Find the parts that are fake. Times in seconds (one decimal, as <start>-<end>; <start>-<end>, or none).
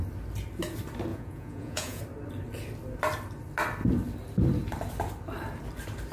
1.1-2.0